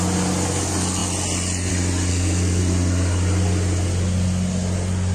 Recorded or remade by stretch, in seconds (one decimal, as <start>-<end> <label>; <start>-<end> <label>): 0.0-2.1 recorded; 2.1-2.6 remade; 2.6-5.1 recorded